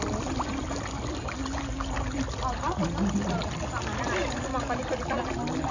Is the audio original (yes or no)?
yes